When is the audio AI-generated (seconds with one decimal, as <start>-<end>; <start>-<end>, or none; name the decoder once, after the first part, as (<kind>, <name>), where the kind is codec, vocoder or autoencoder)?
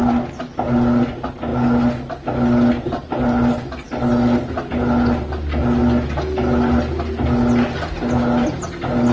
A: none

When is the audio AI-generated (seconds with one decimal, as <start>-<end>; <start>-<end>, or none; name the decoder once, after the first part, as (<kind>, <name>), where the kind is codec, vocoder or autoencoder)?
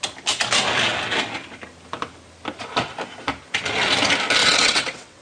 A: 4.4-5.2 (vocoder, WaveNeXt)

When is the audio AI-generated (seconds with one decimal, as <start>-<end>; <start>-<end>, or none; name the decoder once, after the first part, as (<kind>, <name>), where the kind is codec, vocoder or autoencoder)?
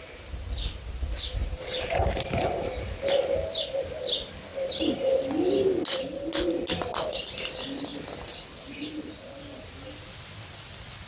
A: 1.4-3.0 (vocoder, BigVGAN v2)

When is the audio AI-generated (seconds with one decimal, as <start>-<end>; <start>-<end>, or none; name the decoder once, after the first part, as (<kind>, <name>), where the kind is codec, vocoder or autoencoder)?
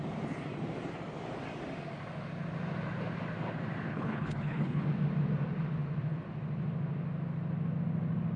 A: 3.9-4.8 (codec, HILCodec)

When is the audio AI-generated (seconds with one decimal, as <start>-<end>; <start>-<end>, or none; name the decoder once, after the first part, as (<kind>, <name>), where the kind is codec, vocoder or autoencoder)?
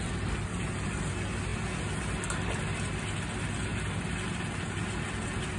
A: none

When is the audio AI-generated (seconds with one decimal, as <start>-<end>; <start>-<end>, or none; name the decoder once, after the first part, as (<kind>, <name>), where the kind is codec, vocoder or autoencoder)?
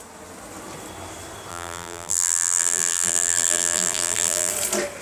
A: 1.5-4.5 (vocoder, BigVGAN v2)